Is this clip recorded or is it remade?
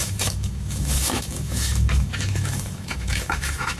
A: remade